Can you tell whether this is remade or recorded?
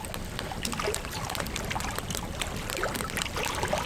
recorded